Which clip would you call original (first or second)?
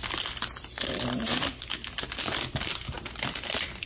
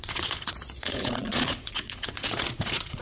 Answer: first